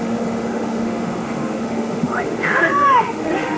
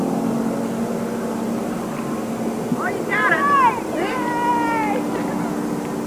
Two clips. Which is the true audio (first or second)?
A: second